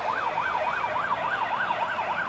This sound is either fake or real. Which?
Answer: real